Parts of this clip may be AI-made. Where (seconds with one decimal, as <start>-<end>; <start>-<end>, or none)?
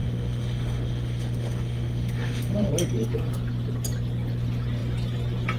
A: 0.0-2.7